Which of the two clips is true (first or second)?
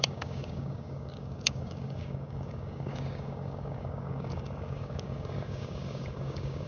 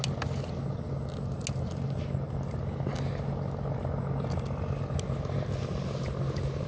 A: second